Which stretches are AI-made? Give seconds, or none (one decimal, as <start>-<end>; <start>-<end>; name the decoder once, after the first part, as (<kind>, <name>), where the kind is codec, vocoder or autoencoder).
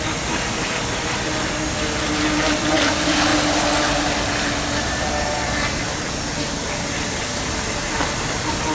none